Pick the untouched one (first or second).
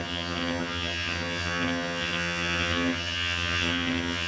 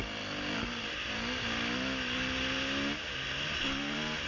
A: second